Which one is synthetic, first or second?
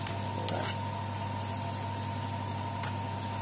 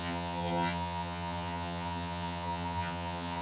second